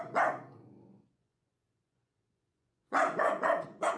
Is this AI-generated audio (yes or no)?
yes